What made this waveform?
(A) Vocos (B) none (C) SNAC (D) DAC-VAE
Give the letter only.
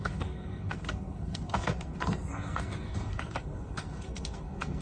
C